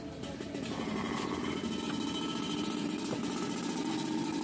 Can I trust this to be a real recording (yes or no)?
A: yes